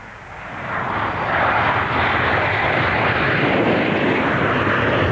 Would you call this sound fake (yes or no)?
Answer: no